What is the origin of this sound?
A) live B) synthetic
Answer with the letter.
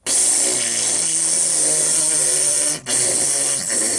A